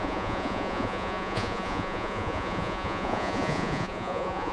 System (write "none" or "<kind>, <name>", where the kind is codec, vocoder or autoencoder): vocoder, Vocos